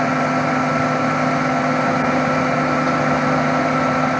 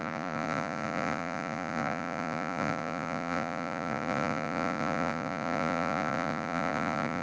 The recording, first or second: first